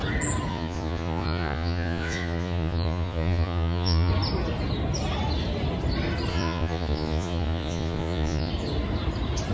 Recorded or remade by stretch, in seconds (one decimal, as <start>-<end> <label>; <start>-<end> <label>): 0.0-0.5 recorded; 0.5-4.1 remade; 4.1-6.3 recorded; 6.3-8.5 remade; 8.5-9.5 recorded